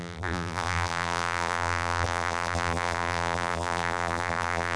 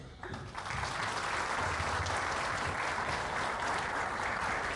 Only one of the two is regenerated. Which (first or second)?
first